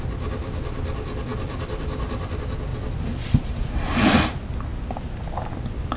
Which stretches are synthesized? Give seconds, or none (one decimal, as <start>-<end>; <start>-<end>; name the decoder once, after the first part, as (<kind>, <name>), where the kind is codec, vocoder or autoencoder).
2.7-3.7 (vocoder, BigVGAN v2)